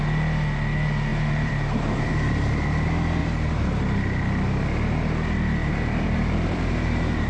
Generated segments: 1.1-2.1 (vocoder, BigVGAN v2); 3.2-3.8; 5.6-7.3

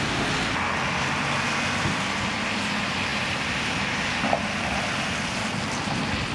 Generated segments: none

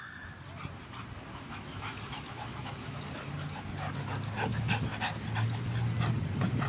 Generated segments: 1.3-3.0 (autoencoder, DAC-VAE)

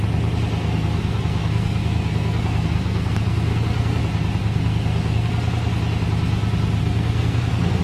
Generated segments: 0.6-4.0 (codec, SNAC); 4.4-5.3; 6.8-7.8

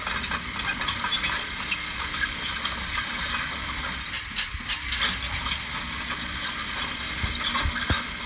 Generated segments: none

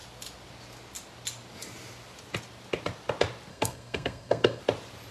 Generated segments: 3.5-4.6 (codec, SNAC)

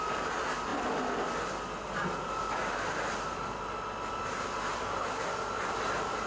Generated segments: none